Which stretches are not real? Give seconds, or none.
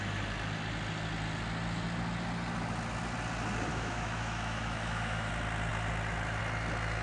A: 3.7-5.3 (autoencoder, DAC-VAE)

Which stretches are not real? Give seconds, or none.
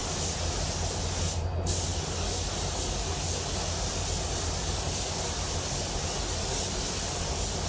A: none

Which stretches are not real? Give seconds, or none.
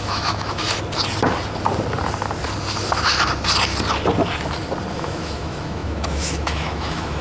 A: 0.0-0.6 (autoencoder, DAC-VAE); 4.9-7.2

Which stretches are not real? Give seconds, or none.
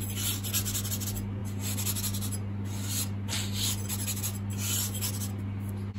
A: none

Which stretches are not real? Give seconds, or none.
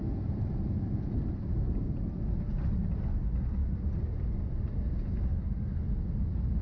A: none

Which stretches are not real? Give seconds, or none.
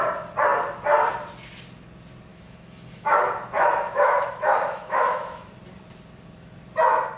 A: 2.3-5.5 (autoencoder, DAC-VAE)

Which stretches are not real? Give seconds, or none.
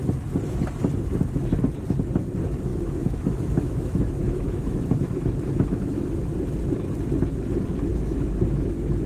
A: 2.7-6.3 (autoencoder, DAC-VAE); 7.9-9.1